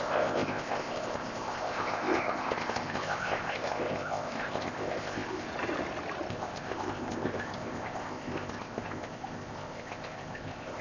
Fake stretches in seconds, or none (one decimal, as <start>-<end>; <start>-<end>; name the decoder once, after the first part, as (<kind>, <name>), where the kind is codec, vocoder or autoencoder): 0.0-5.5 (codec, ZipCodec); 6.3-10.8